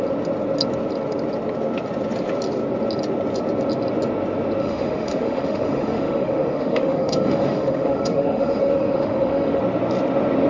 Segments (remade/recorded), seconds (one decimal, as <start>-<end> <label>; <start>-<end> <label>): 0.0-4.6 recorded; 4.6-9.6 remade; 9.6-10.5 recorded